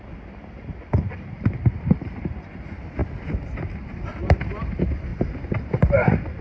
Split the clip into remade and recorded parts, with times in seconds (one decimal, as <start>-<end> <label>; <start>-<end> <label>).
0.0-5.1 recorded; 5.1-6.4 remade